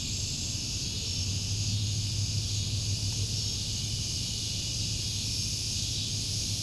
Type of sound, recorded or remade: recorded